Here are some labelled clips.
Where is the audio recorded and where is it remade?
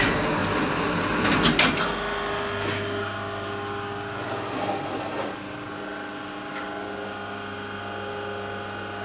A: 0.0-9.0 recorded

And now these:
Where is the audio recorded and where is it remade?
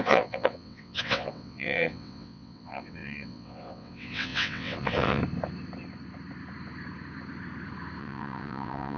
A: 0.0-5.2 remade; 5.2-8.0 recorded; 8.0-9.0 remade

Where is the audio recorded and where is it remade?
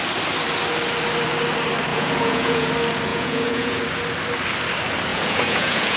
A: 0.0-1.9 recorded; 1.9-2.7 remade; 2.7-3.1 recorded; 3.1-3.8 remade; 3.8-5.1 recorded; 5.1-6.0 remade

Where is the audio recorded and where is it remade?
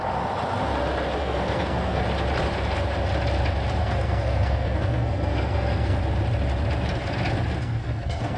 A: 0.0-1.2 recorded; 1.2-2.0 remade; 2.0-3.8 recorded; 3.8-6.0 remade; 6.0-7.6 recorded; 7.6-8.4 remade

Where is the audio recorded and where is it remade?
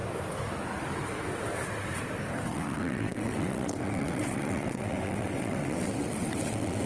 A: 0.0-2.5 recorded; 2.5-6.9 remade